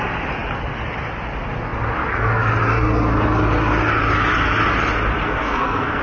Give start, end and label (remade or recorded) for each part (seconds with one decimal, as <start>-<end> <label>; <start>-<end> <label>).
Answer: 0.0-5.2 recorded; 5.2-6.0 remade